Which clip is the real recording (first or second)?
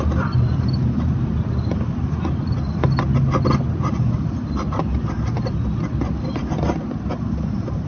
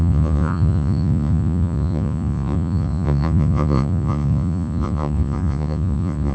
first